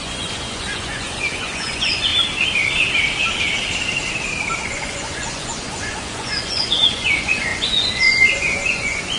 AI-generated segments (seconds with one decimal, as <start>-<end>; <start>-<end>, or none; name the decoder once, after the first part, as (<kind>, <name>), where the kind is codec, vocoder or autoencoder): 0.0-2.1 (vocoder, Vocos); 4.6-9.2